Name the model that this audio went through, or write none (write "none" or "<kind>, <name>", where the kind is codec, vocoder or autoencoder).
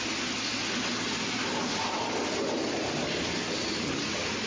none